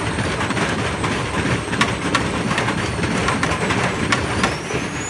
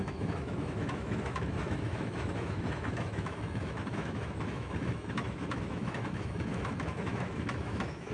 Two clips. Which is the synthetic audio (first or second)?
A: second